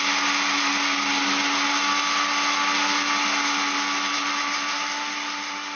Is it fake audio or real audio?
real